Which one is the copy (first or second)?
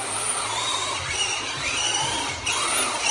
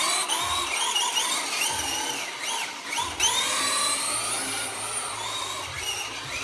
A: first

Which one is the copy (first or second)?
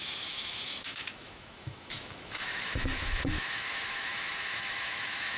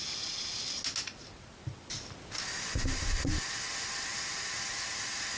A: first